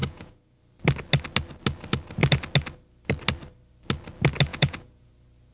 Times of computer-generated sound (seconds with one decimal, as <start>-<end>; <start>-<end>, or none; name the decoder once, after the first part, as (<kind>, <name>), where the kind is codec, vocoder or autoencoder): 0.0-0.6 (vocoder, Vocos); 4.5-5.1